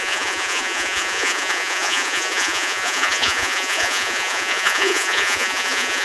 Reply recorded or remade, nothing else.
remade